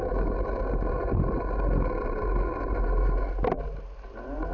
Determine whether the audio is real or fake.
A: real